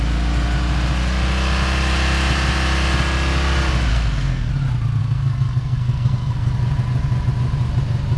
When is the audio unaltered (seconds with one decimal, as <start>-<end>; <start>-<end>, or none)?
0.0-3.9; 4.5-5.0; 6.5-8.2